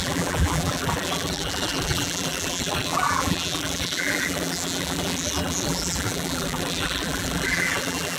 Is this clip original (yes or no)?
no